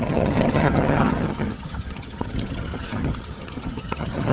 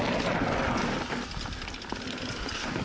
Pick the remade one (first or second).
first